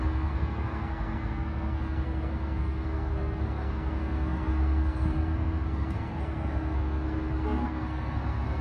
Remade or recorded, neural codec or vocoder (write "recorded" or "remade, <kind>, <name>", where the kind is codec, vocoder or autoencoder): remade, codec, SNAC